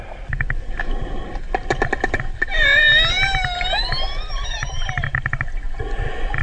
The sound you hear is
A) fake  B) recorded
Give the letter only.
B